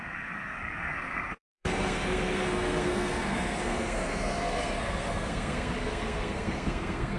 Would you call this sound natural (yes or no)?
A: no